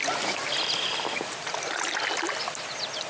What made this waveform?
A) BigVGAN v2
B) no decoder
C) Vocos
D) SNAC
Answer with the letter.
B